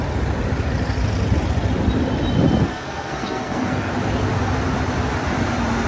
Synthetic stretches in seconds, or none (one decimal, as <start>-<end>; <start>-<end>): 2.7-3.9